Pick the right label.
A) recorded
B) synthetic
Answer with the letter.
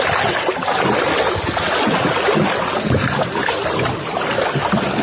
A